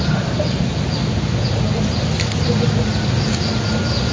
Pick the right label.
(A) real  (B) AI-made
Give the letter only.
A